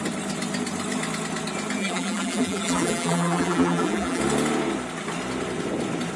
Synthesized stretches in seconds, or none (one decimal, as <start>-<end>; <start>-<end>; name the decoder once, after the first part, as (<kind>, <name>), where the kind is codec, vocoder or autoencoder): 1.8-4.2 (vocoder, BigVGAN v2)